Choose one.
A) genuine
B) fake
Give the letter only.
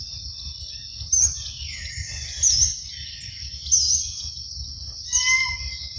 A